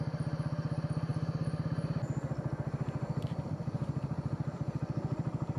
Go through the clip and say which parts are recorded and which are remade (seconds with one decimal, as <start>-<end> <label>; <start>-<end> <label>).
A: 0.0-5.6 recorded